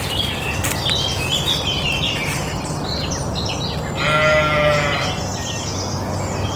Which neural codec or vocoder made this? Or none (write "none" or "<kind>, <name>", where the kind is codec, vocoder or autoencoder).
none